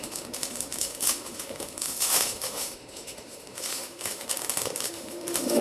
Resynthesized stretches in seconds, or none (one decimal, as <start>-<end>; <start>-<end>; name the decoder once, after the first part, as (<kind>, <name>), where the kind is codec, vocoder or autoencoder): 0.0-5.6 (autoencoder, DAC-VAE)